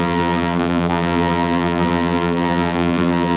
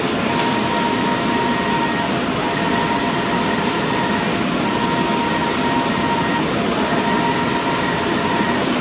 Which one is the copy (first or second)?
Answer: first